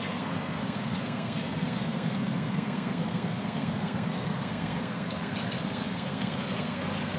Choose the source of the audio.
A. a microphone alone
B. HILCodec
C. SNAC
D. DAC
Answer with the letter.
C